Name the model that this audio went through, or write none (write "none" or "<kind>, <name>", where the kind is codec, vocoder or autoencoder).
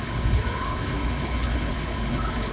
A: codec, HILCodec